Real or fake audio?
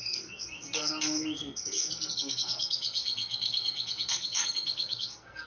fake